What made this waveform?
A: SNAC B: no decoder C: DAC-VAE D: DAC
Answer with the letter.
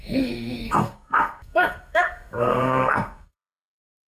A